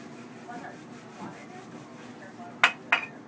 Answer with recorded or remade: recorded